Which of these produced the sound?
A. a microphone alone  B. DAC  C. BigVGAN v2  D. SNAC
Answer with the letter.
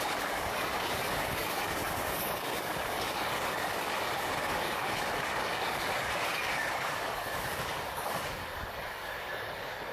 B